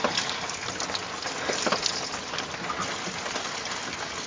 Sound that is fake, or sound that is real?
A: real